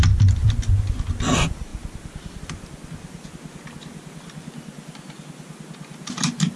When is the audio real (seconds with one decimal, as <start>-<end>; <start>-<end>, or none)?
0.0-1.7; 2.4-6.6